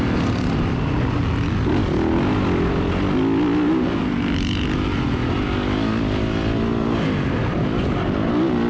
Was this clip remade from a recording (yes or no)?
no